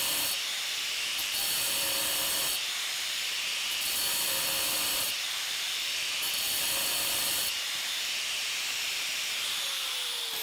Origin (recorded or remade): remade